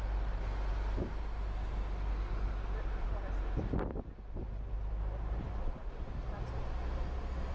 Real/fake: real